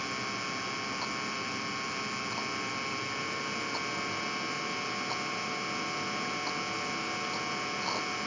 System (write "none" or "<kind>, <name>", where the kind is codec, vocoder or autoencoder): none